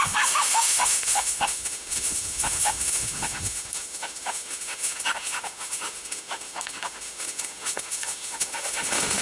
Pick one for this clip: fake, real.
fake